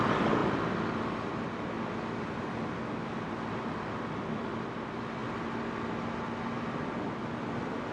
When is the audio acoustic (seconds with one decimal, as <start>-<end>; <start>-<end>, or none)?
0.0-7.9